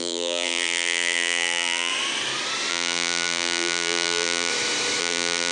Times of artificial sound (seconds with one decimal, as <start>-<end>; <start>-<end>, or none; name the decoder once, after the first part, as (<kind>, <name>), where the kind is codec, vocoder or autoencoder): 0.0-1.9 (vocoder, BigVGAN v2); 2.7-4.5; 5.0-5.5